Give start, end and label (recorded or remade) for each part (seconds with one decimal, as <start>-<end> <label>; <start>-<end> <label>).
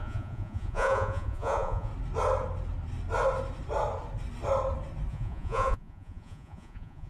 0.0-1.9 remade; 1.9-5.1 recorded; 5.1-7.1 remade